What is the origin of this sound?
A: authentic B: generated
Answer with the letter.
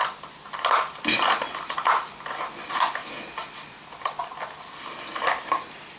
A